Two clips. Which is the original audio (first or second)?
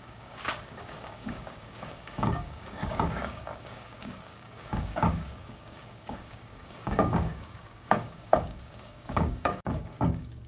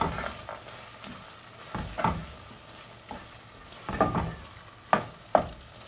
second